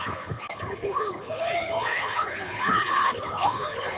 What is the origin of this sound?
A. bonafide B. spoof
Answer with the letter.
B